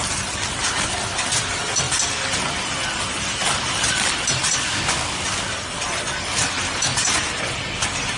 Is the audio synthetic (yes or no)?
no